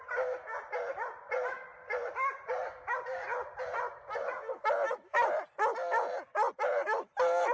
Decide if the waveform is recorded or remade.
recorded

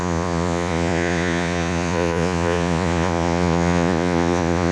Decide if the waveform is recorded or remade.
remade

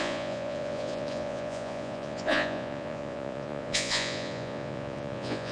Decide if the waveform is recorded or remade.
remade